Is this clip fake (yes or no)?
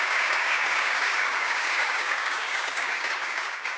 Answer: yes